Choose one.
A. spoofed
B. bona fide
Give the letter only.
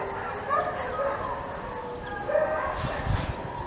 B